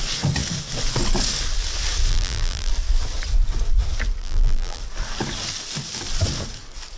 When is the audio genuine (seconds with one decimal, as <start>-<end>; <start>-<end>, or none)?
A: 0.0-2.1; 2.7-4.2; 4.8-7.0